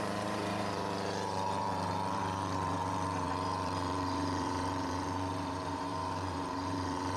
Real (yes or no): no